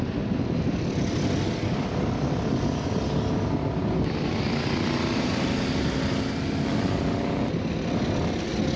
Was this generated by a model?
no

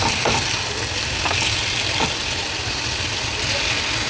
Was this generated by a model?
no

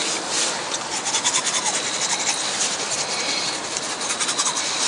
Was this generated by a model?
no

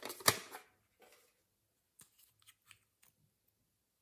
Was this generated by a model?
no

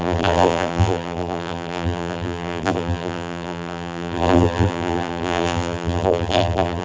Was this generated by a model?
yes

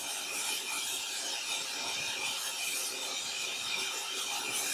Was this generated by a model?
no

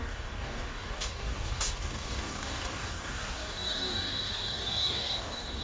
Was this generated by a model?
yes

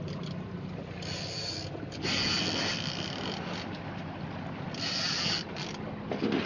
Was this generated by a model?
yes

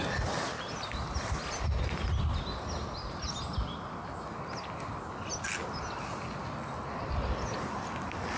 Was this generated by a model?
no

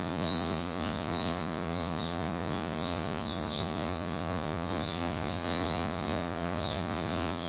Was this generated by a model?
yes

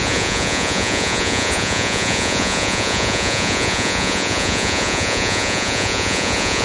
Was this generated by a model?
yes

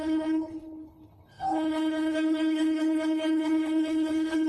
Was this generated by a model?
yes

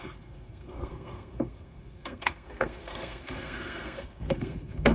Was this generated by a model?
yes